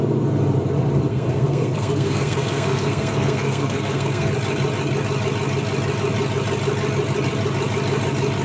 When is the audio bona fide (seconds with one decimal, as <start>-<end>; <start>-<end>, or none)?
0.0-1.1; 4.3-8.4